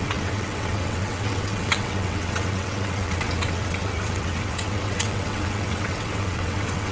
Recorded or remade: remade